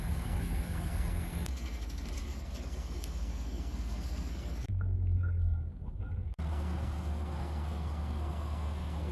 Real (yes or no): no